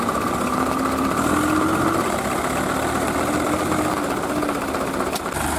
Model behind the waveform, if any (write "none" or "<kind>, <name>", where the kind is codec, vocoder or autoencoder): none